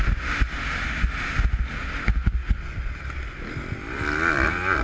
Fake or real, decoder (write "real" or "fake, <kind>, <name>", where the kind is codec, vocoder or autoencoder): real